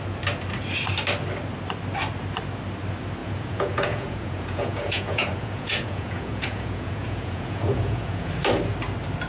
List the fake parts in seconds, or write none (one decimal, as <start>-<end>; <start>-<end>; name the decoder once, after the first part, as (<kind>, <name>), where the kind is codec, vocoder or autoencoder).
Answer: 3.2-8.3 (vocoder, Vocos)